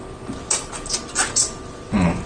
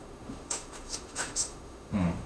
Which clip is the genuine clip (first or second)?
first